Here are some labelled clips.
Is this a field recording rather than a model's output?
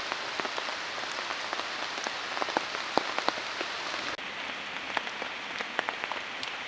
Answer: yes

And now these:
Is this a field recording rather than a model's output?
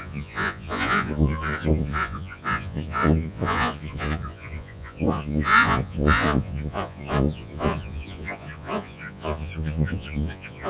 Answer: no